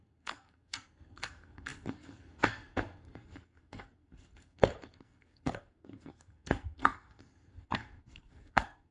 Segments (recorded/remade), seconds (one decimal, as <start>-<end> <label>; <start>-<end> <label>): 0.0-8.9 remade

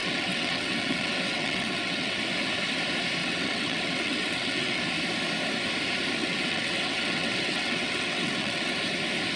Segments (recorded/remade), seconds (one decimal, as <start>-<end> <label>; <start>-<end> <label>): 0.0-2.2 remade; 2.2-3.2 recorded; 3.2-4.8 remade; 4.8-6.2 recorded; 6.2-8.7 remade; 8.7-9.4 recorded